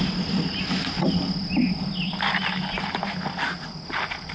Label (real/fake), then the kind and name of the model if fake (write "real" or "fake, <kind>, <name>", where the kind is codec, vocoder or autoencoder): real